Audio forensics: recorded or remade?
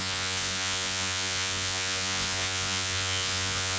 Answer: remade